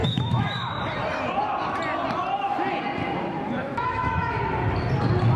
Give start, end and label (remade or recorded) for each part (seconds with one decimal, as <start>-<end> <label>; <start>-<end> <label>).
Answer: 0.0-0.8 remade; 0.8-3.6 recorded; 3.6-4.4 remade; 4.4-5.4 recorded